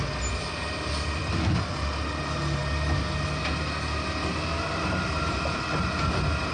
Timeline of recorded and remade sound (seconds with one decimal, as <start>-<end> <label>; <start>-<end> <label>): 0.0-6.5 recorded